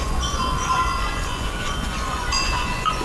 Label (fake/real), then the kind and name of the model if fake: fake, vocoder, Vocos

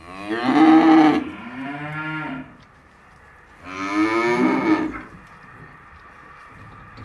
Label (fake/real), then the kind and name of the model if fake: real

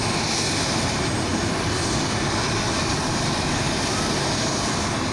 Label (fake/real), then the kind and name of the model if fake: real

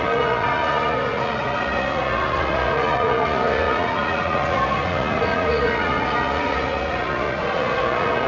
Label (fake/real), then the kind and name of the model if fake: fake, vocoder, Vocos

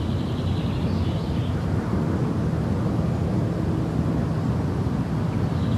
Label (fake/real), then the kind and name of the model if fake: real